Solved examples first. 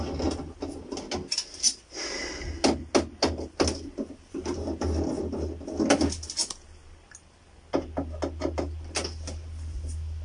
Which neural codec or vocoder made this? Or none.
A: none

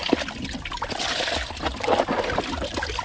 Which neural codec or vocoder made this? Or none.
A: none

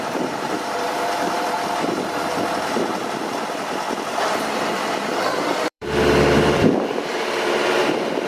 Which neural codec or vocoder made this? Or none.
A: vocoder, BigVGAN v2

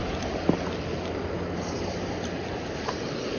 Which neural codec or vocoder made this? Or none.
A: none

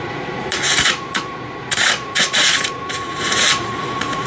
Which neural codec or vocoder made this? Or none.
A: vocoder, Vocos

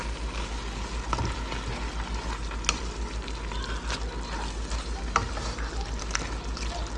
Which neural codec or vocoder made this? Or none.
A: none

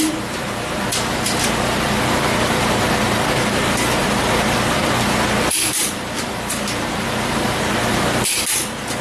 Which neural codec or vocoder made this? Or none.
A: vocoder, BigVGAN v2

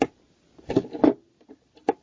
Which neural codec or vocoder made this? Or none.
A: none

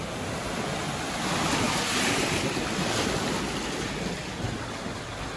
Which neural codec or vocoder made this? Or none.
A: none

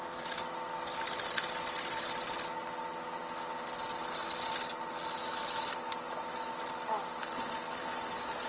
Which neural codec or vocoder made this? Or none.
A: none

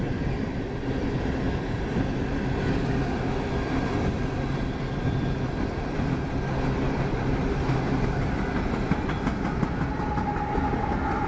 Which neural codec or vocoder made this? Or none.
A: none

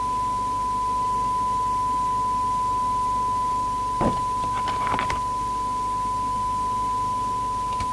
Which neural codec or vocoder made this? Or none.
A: none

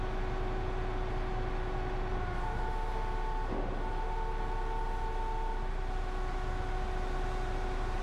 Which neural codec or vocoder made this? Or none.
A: none